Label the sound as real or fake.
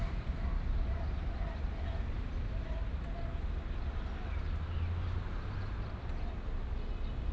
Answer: real